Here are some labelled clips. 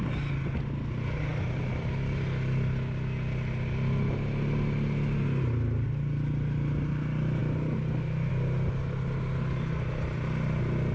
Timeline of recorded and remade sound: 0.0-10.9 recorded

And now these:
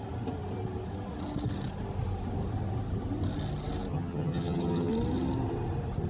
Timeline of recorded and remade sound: 0.0-3.9 recorded; 3.9-4.9 remade; 4.9-6.1 recorded

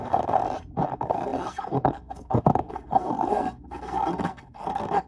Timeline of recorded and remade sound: 0.0-0.4 remade; 0.4-0.9 recorded; 0.9-5.1 remade

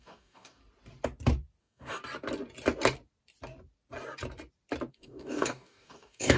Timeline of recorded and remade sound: 0.0-0.6 remade; 0.6-1.6 recorded; 1.6-2.0 remade; 2.0-4.9 recorded; 4.9-6.4 remade

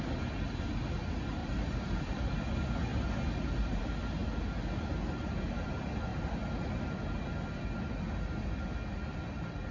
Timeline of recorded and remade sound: 0.0-1.4 recorded; 1.4-2.2 remade; 2.2-2.9 recorded; 2.9-3.8 remade; 3.8-9.7 recorded

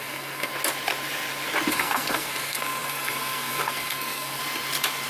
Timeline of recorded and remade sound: 0.0-0.5 remade; 0.5-1.7 recorded; 1.7-4.4 remade; 4.4-5.1 recorded

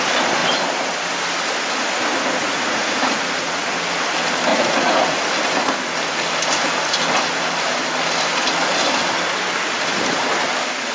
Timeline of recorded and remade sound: 0.0-2.4 recorded; 2.4-3.6 remade; 3.6-4.5 recorded; 4.5-5.2 remade; 5.2-10.9 recorded

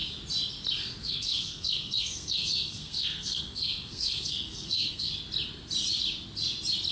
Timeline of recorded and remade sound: 0.0-1.0 recorded; 1.0-5.1 remade; 5.1-6.9 recorded